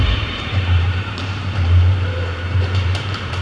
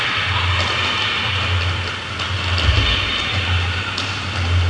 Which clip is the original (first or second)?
second